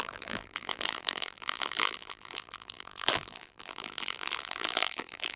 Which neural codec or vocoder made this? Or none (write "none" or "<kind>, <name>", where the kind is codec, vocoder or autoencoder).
vocoder, BigVGAN v2